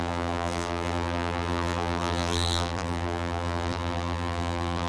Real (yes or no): no